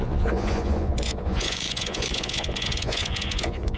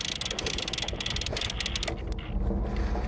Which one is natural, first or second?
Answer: second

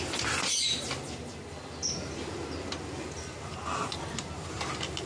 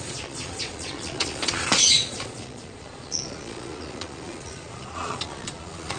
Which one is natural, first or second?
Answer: first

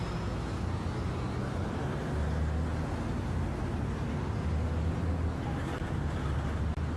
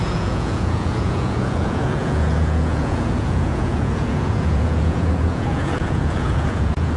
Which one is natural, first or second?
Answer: first